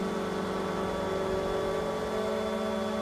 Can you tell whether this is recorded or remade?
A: recorded